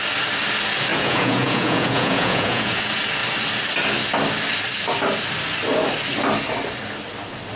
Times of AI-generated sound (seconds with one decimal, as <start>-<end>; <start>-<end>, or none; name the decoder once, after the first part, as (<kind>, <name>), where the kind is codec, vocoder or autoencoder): 0.9-2.8 (vocoder, Vocos)